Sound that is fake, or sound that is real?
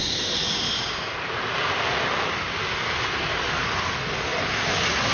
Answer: real